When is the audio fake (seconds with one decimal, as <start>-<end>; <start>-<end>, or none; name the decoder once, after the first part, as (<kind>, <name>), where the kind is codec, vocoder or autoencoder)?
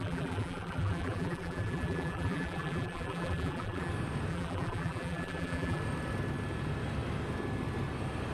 0.0-3.9 (vocoder, BigVGAN v2); 4.3-5.8